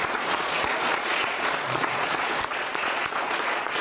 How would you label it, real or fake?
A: fake